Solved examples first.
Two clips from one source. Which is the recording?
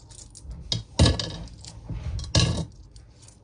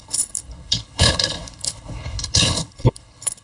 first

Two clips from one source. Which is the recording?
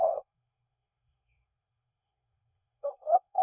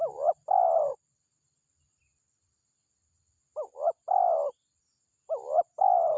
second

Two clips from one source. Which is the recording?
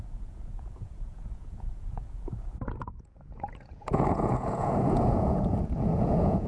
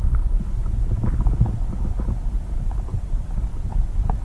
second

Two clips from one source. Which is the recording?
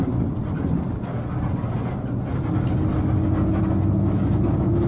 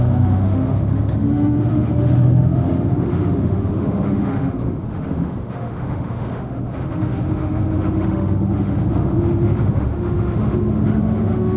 first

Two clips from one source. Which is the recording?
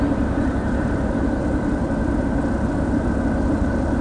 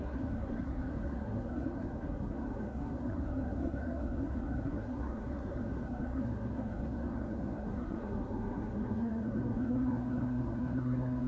first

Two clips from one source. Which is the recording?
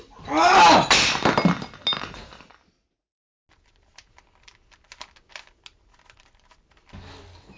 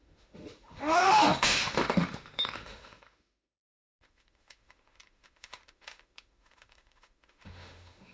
first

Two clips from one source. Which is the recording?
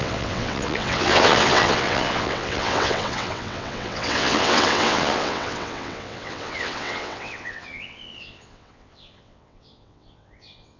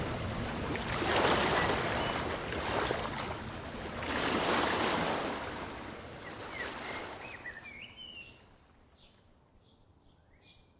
second